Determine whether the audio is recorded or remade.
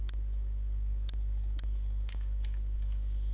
remade